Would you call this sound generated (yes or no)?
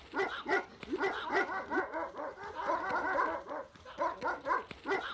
no